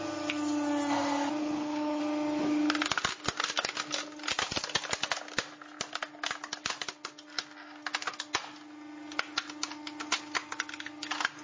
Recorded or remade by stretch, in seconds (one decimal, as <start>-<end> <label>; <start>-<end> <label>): 0.0-1.4 recorded; 1.4-2.0 remade; 2.0-11.4 recorded